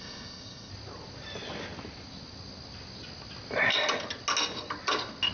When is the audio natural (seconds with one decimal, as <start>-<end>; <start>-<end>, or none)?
0.7-5.3